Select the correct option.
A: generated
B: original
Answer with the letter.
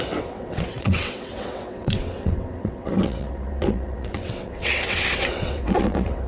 A